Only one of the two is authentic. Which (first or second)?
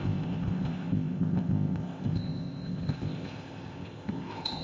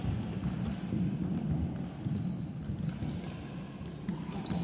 second